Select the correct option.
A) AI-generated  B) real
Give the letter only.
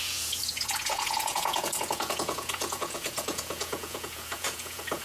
A